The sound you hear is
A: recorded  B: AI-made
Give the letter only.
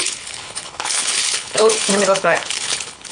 B